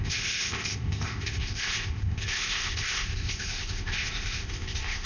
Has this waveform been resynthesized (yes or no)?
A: yes